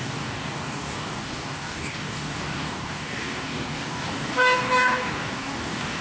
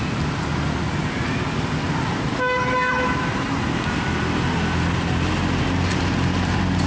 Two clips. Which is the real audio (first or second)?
second